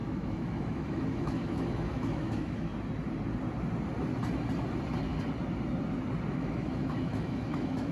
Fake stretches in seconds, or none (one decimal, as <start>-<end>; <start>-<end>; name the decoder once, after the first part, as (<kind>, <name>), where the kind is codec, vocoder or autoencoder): 0.0-2.7 (autoencoder, DAC-VAE); 6.3-7.9